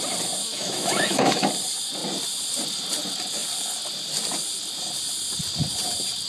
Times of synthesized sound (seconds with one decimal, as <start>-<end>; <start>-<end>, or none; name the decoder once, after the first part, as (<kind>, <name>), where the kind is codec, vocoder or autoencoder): 0.4-1.5 (autoencoder, DAC-VAE)